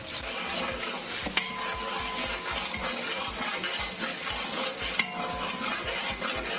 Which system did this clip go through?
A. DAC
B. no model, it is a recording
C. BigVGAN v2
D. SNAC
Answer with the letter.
B